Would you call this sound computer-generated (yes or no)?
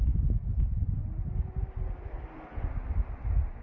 no